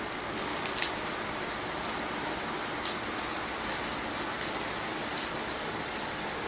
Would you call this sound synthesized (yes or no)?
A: no